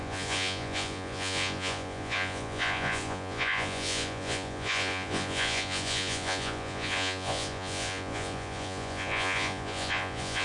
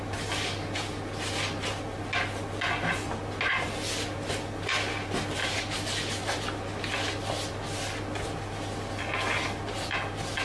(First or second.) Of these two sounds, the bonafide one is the second